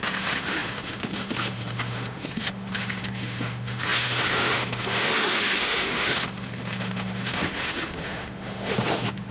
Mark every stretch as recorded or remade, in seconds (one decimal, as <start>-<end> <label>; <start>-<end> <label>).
0.0-9.3 remade

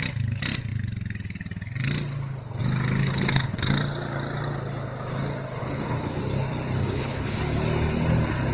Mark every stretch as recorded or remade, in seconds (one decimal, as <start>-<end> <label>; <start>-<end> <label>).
0.0-3.0 recorded; 3.0-3.7 remade; 3.7-5.6 recorded; 5.6-6.2 remade; 6.2-6.8 recorded; 6.8-7.4 remade; 7.4-8.5 recorded

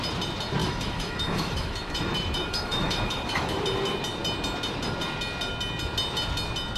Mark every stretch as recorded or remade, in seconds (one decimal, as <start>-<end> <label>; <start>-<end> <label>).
0.0-0.6 recorded; 0.6-3.6 remade; 3.6-6.8 recorded

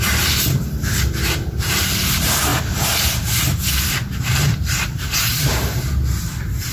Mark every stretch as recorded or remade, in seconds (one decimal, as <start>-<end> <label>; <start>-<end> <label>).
0.0-6.7 remade

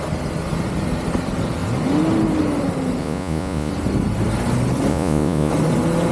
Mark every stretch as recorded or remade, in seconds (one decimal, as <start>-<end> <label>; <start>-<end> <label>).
0.0-3.0 recorded; 3.0-3.7 remade; 3.7-4.9 recorded; 4.9-5.5 remade; 5.5-6.1 recorded

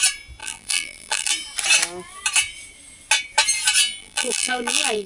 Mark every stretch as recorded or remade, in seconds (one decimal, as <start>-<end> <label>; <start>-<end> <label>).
0.0-0.4 recorded; 0.4-1.3 remade; 1.3-4.0 recorded; 4.0-5.1 remade

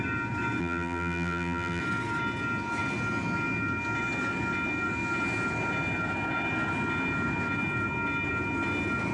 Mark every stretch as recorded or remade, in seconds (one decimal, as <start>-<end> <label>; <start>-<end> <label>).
0.0-0.6 recorded; 0.6-1.8 remade; 1.8-9.1 recorded